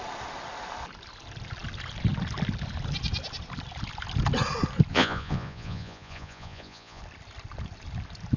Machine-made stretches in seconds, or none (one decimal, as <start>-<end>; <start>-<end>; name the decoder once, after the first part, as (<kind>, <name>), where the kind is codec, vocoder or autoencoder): 4.9-7.0 (vocoder, Vocos)